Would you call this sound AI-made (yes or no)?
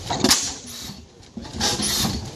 yes